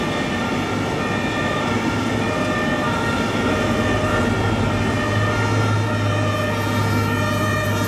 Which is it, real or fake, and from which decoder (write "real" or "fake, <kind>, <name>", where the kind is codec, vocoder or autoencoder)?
real